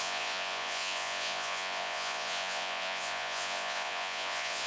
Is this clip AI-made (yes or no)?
yes